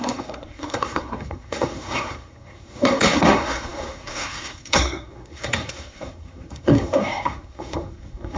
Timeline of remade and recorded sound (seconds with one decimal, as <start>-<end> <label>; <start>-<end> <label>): 0.0-8.4 remade